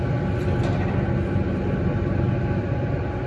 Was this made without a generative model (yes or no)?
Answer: yes